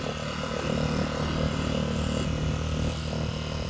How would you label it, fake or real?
real